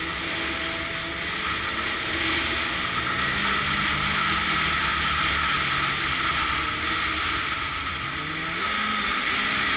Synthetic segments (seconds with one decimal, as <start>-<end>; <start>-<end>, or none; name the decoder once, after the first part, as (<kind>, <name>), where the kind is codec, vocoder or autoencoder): 8.6-9.3 (autoencoder, DAC-VAE)